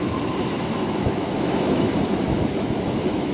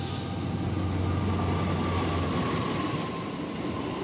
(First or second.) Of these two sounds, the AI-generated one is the first